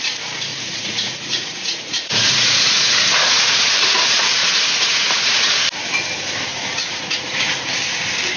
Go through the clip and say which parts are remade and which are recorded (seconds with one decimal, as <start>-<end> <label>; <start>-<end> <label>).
0.0-0.5 recorded; 0.5-3.7 remade; 3.7-4.4 recorded; 4.4-5.6 remade; 5.6-6.5 recorded; 6.5-7.6 remade; 7.6-8.4 recorded